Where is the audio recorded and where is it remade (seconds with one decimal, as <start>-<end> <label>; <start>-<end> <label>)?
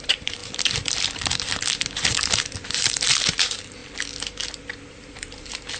0.0-0.4 remade; 0.4-3.4 recorded; 3.4-3.8 remade; 3.8-4.9 recorded; 4.9-5.8 remade